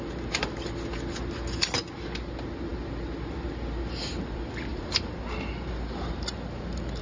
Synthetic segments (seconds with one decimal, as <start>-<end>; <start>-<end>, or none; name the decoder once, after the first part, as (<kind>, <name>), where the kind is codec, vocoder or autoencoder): none

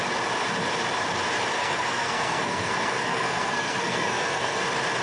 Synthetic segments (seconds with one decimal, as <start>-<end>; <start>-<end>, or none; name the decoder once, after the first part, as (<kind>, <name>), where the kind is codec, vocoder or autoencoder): 1.6-4.6 (codec, SNAC)

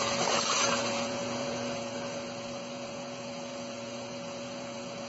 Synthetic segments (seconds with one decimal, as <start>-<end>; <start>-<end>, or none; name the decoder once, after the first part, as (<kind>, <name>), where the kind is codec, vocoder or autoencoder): 0.0-5.1 (vocoder, Vocos)

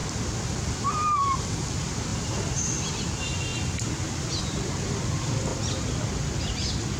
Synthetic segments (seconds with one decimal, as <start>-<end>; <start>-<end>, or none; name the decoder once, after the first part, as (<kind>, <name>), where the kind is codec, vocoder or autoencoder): 0.0-2.1 (vocoder, BigVGAN v2); 2.9-3.5; 4.4-7.0

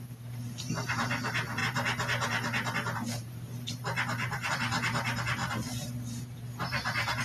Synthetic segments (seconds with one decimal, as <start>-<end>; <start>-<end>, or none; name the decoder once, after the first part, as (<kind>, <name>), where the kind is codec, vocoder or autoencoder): 0.0-7.2 (vocoder, BigVGAN v2)

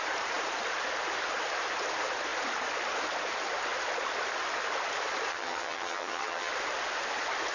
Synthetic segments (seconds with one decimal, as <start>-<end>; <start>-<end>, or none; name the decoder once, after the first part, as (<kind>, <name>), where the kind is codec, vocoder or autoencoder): 5.3-6.5 (vocoder, HiFi-GAN)

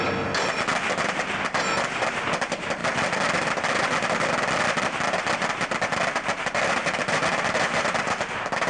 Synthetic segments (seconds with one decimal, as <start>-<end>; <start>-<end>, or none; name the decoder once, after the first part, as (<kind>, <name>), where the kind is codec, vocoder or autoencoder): none

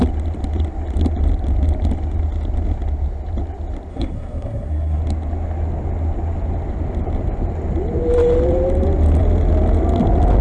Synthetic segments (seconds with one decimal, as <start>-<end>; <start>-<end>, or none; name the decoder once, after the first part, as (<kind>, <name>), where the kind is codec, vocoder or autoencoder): 3.9-5.0 (codec, SNAC)